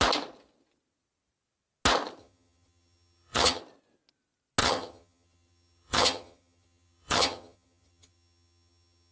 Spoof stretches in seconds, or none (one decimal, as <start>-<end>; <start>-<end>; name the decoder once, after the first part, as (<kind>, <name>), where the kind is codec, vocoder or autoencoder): 2.2-3.6 (vocoder, HiFi-GAN); 4.6-9.1